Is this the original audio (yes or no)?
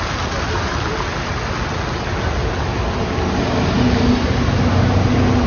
yes